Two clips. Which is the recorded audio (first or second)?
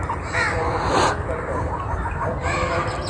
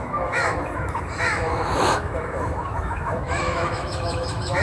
first